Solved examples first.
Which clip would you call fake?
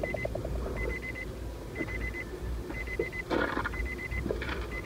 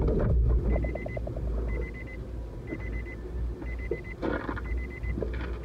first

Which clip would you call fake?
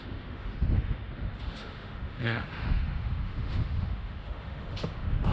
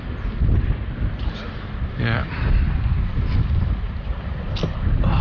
first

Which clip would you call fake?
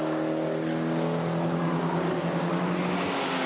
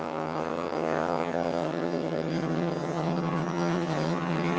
second